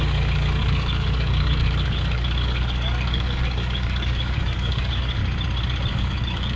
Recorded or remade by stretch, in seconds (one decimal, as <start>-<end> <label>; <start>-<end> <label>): 0.0-5.2 remade; 5.2-5.9 recorded; 5.9-6.6 remade

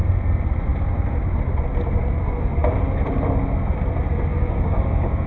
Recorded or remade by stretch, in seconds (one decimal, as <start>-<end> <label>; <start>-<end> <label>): 0.0-4.3 recorded; 4.3-5.3 remade

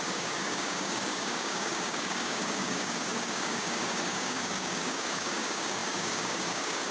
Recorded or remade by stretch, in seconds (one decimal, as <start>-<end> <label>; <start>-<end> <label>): 0.0-6.9 remade

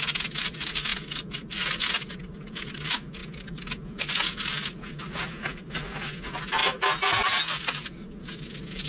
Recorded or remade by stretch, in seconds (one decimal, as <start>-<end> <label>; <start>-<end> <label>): 0.0-8.9 recorded

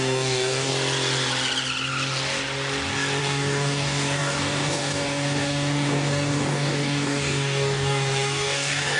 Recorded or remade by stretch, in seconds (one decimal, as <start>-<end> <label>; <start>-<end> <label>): 0.0-0.7 remade; 0.7-3.2 recorded; 3.2-9.0 remade

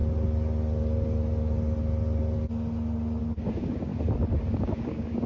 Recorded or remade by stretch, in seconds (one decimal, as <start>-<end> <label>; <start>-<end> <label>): 0.0-3.2 recorded; 3.2-3.9 remade; 3.9-4.6 recorded; 4.6-5.3 remade

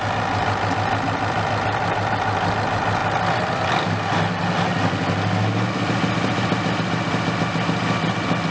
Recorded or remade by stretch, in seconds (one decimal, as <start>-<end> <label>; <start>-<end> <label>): 0.0-8.5 recorded